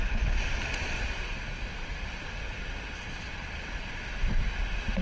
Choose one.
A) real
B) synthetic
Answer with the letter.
A